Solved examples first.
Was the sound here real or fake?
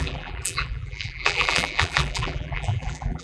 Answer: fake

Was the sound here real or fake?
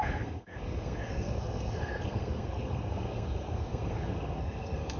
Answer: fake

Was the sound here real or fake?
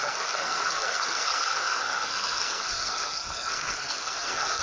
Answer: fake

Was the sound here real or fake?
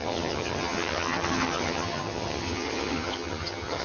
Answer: fake